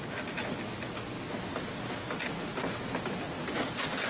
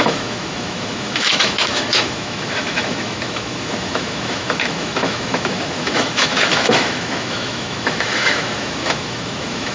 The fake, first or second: second